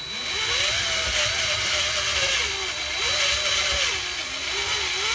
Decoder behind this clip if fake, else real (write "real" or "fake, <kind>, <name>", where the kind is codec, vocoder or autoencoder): real